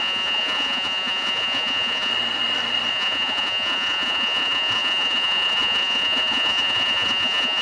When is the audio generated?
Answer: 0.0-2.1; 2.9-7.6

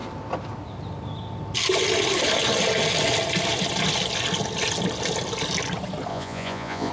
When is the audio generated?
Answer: 6.1-6.9

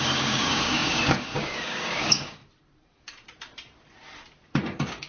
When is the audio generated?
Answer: 0.0-2.4; 4.6-5.1

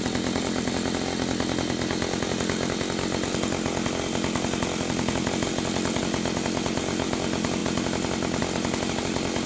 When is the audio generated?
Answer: none

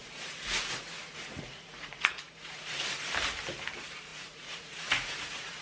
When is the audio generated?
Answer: 0.0-2.7; 4.1-5.6

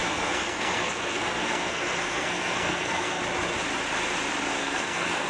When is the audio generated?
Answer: 0.0-3.2; 4.6-5.3